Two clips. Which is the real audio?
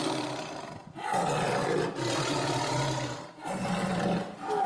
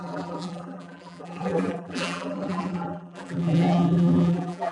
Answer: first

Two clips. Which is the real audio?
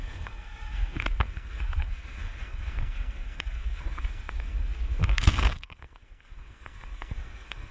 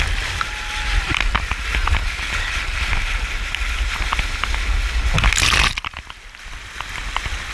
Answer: second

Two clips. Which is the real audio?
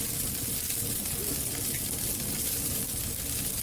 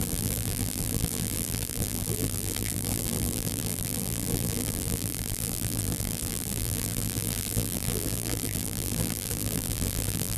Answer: first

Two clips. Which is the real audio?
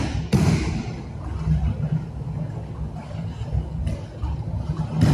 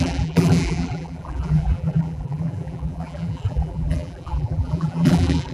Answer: first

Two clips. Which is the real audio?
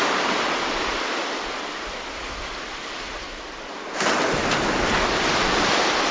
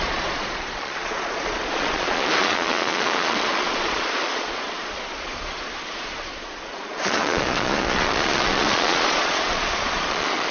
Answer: first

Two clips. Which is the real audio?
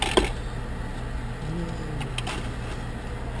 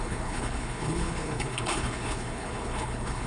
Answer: first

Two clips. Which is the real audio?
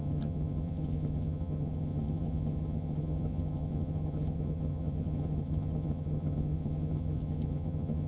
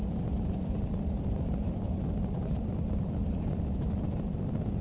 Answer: second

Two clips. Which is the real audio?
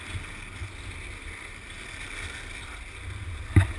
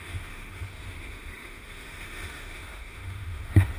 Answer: first